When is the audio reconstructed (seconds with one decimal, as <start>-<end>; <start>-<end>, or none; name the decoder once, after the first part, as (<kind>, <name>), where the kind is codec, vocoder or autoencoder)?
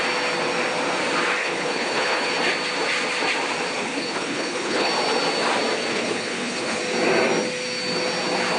1.4-2.3 (codec, HILCodec); 3.8-4.9; 5.9-6.8